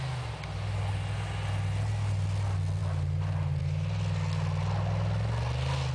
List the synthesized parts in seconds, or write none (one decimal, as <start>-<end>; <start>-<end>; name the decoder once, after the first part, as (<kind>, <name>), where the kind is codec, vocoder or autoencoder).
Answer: none